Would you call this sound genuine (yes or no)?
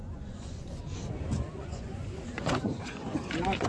no